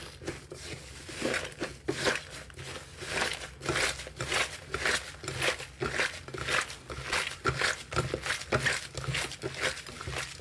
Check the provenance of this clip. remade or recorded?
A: recorded